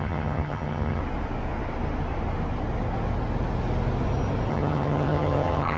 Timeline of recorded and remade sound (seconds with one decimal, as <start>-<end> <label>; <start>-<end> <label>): 0.0-1.0 remade; 1.0-4.5 recorded; 4.5-5.8 remade